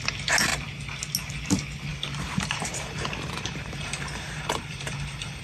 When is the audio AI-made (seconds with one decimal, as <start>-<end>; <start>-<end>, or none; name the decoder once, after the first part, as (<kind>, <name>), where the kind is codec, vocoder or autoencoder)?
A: 1.9-5.4 (vocoder, BigVGAN v2)